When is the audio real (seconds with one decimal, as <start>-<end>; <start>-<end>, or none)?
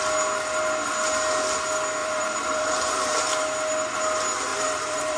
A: 0.0-2.0; 3.2-4.5